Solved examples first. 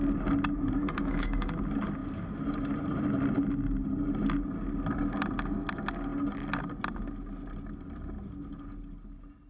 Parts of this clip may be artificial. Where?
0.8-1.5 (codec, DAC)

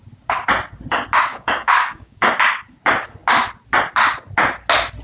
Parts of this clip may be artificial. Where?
1.3-2.2 (codec, DAC)